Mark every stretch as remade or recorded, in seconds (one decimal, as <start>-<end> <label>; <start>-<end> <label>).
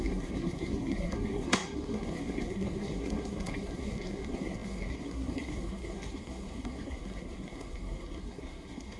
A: 0.0-9.0 remade